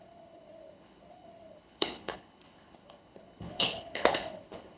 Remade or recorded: remade